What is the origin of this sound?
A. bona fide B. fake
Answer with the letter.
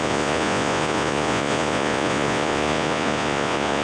B